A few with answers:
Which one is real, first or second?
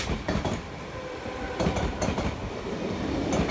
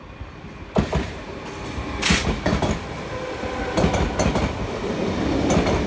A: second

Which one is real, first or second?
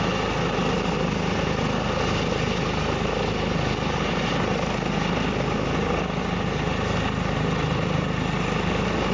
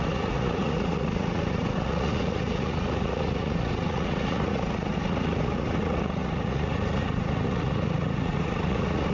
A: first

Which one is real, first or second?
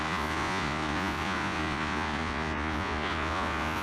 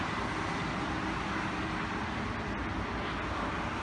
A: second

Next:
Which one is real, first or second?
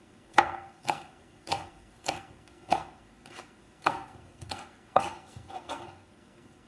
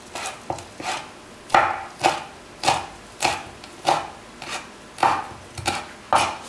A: second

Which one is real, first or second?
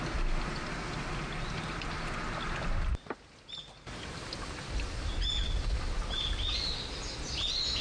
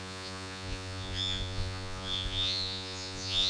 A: first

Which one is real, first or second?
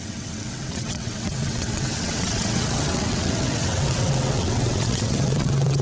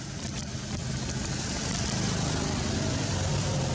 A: second